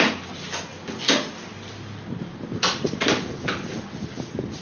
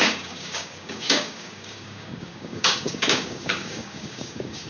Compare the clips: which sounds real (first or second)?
first